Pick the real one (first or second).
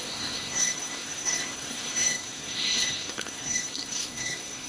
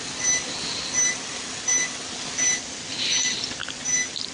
second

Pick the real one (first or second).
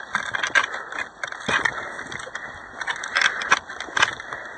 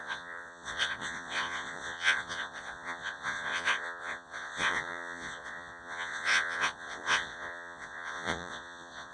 first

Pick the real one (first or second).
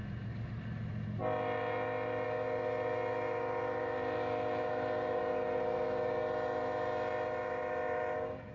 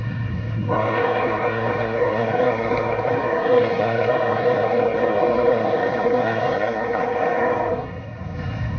first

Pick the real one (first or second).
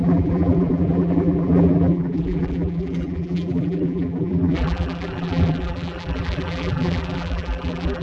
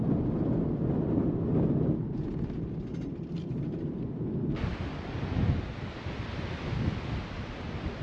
second